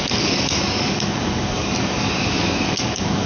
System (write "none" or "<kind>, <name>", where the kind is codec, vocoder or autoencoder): codec, DAC